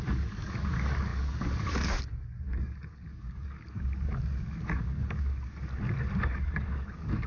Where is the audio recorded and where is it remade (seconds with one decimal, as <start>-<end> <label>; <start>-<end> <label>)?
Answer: 0.0-5.7 remade; 5.7-6.2 recorded; 6.2-7.3 remade